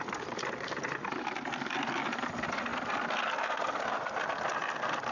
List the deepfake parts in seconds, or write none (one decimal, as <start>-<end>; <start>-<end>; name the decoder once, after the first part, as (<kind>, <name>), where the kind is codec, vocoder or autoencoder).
none